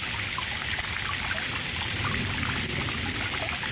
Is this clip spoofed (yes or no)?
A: no